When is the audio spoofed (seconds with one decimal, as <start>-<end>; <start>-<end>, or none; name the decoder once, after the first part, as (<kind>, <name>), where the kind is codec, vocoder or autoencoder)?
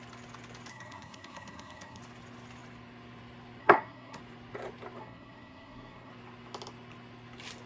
0.7-2.0 (codec, SNAC); 3.6-4.2; 5.0-6.1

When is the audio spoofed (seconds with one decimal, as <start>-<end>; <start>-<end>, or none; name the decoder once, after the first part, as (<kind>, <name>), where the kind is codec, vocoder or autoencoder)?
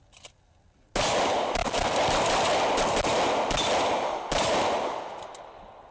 none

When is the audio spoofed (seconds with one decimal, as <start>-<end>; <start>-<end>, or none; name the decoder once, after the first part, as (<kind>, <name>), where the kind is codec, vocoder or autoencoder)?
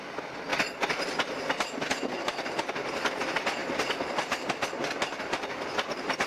none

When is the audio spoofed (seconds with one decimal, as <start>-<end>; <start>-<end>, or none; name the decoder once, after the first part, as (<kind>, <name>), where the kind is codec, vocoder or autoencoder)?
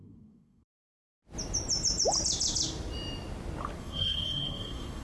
0.0-0.8 (codec, SNAC); 3.8-5.0